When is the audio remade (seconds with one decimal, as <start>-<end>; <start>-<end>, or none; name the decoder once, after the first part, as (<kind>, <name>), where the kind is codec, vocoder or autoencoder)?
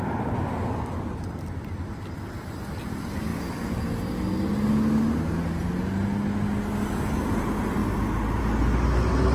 none